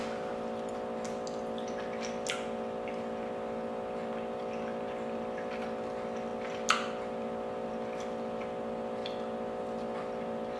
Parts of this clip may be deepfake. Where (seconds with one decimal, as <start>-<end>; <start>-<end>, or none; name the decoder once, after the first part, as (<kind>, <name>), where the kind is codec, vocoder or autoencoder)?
none